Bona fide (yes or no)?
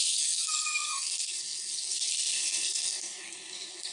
no